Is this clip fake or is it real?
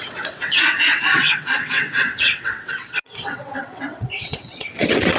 fake